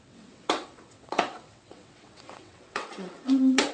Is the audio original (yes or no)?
no